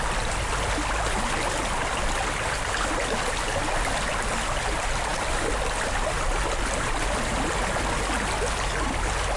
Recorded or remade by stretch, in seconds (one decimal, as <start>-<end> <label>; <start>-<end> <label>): 0.0-9.4 recorded